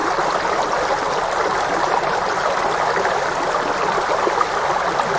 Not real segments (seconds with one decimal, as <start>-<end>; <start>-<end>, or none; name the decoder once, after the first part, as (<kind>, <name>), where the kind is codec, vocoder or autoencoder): none